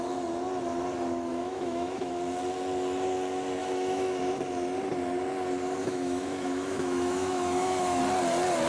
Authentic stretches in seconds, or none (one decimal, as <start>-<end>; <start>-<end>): 0.0-1.3; 2.1-3.6; 4.2-5.8; 8.0-8.7

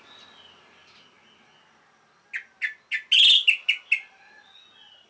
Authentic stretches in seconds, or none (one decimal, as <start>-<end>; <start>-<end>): 0.0-5.1

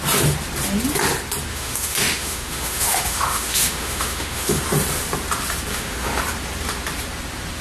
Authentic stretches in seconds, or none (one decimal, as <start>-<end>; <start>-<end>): 0.0-1.5; 4.6-5.7; 6.2-7.6

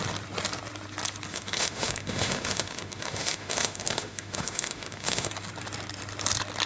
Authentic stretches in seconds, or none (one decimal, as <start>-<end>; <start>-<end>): 0.0-1.3; 5.3-6.7

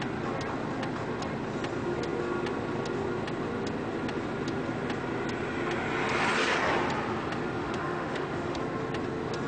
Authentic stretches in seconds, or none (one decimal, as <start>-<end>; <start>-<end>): 0.0-7.6; 8.6-9.5